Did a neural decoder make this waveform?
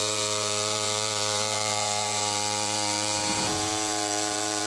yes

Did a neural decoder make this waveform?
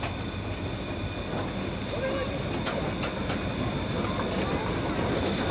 no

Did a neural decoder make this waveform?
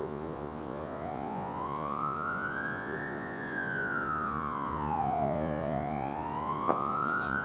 yes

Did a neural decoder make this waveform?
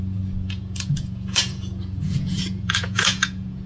yes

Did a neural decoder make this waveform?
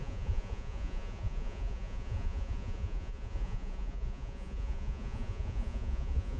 yes